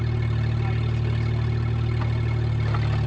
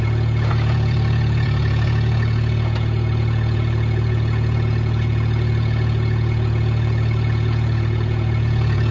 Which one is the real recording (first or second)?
first